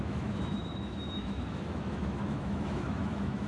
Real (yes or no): no